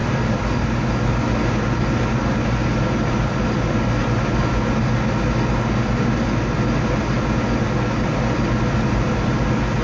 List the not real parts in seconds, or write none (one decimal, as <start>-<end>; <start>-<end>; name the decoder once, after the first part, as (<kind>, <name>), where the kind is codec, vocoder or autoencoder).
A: none